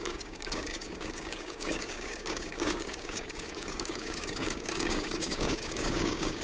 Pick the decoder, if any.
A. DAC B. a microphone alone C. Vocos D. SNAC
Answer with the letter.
A